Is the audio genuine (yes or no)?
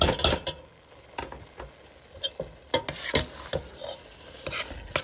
yes